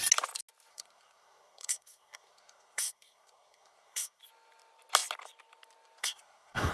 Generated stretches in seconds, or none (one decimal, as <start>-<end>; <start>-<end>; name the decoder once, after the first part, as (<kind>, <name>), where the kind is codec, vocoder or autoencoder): 0.7-4.2 (codec, SNAC); 6.0-6.7